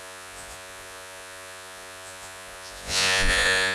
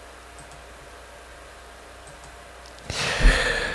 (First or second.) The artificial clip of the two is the first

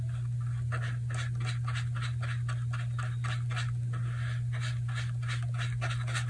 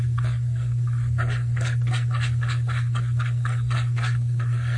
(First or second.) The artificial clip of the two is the second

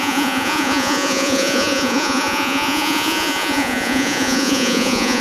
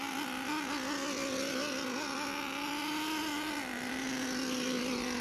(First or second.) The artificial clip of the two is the first